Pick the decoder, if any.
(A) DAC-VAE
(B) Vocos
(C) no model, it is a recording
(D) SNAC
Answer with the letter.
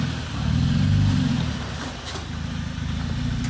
C